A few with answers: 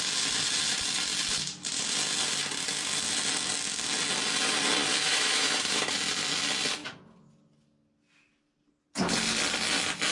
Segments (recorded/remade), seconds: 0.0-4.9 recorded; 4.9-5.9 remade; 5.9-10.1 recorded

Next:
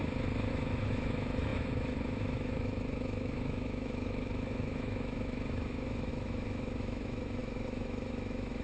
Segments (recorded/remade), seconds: 0.0-0.5 recorded; 0.5-8.6 remade